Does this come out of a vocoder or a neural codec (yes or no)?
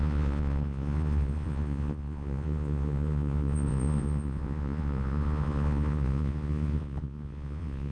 yes